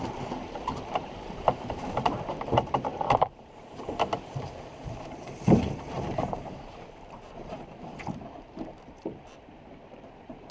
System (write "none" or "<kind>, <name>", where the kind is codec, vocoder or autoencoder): vocoder, BigVGAN v2